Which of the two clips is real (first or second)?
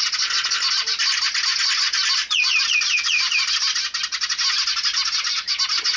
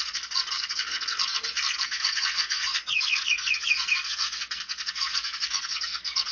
first